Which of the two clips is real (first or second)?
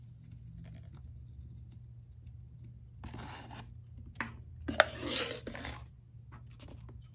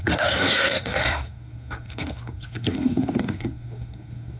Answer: first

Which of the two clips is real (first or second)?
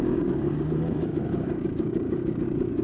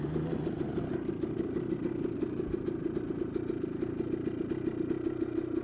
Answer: second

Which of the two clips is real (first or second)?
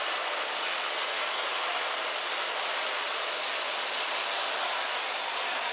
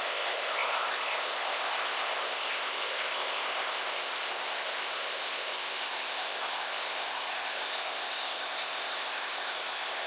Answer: first